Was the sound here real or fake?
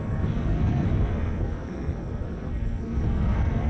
fake